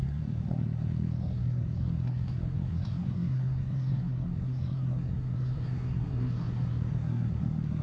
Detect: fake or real fake